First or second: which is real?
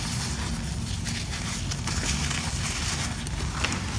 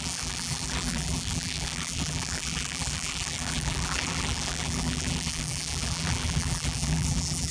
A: first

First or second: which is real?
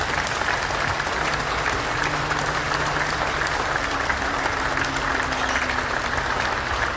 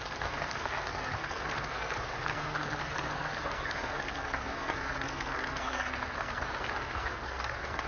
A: first